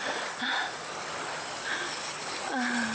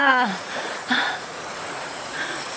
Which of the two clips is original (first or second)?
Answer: first